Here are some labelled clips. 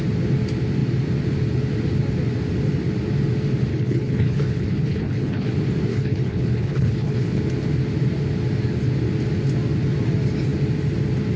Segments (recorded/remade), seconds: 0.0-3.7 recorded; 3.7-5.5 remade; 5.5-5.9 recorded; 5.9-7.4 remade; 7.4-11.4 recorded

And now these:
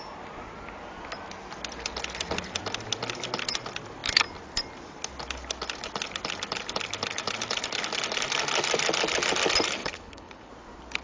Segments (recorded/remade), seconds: 0.0-9.8 recorded; 9.8-10.5 remade; 10.5-11.0 recorded

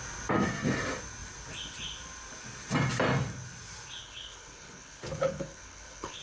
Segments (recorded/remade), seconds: 0.0-4.0 recorded; 4.0-6.2 remade

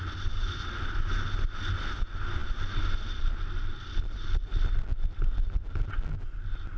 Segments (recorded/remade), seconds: 0.0-6.8 recorded

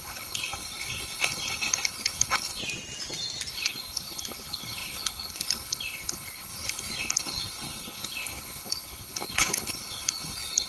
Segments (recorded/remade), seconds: 0.0-2.6 remade; 2.6-3.5 recorded; 3.5-10.7 remade